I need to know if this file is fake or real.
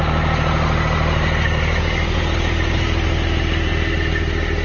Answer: real